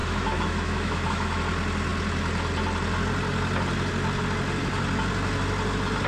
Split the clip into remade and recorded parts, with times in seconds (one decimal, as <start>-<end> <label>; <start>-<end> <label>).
0.0-1.4 remade; 1.4-6.1 recorded